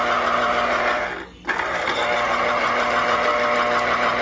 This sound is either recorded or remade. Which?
recorded